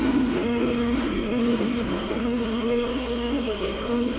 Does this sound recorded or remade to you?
remade